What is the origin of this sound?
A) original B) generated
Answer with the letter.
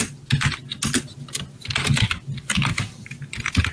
A